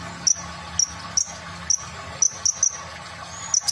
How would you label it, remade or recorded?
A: recorded